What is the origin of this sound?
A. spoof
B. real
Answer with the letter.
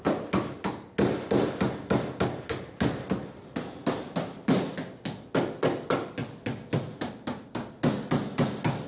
B